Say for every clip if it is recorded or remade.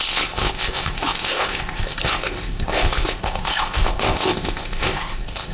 remade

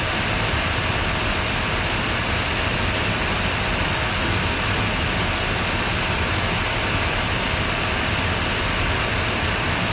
recorded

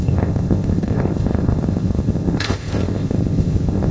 remade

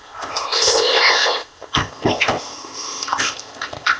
remade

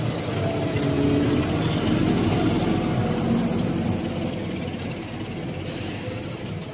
recorded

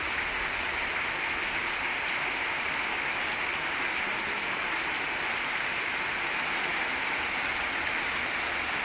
recorded